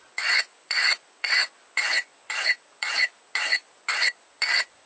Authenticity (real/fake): fake